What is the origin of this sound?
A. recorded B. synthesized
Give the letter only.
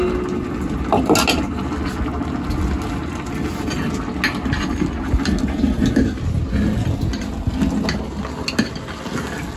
A